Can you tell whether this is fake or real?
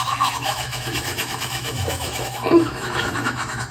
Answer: fake